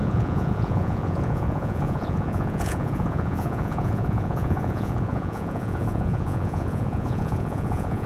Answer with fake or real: fake